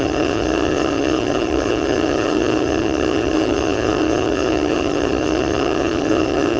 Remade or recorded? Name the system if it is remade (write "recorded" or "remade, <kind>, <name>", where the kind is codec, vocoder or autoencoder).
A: remade, vocoder, HiFi-GAN